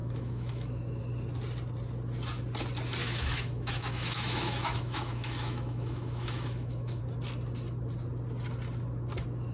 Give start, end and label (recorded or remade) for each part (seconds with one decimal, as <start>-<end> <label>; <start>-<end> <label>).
0.0-1.0 remade; 1.0-3.0 recorded; 3.0-7.0 remade; 7.0-9.5 recorded